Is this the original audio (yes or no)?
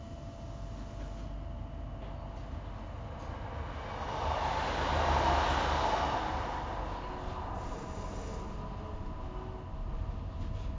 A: yes